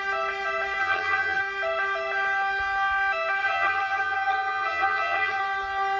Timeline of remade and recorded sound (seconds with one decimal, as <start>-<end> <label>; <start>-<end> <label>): 0.0-0.8 recorded; 0.8-1.4 remade; 1.4-3.4 recorded; 3.4-5.4 remade; 5.4-6.0 recorded